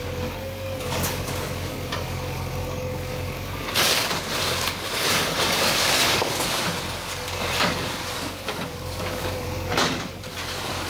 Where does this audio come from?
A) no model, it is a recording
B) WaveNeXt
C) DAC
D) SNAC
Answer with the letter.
C